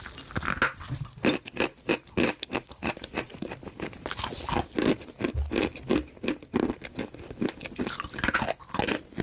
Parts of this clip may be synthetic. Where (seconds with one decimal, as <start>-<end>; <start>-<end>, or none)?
2.6-3.5